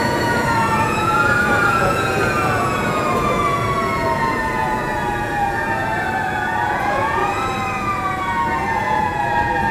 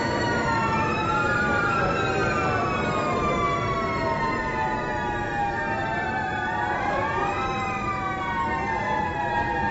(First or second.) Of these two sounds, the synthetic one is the first